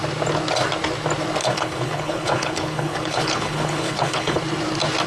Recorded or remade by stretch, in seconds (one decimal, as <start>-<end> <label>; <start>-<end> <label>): 0.0-1.4 recorded; 1.4-4.4 remade; 4.4-5.1 recorded